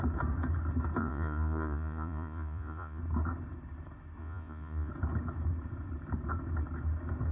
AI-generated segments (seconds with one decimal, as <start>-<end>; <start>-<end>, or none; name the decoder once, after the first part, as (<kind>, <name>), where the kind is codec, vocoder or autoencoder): 1.0-3.0 (vocoder, Vocos); 4.2-4.9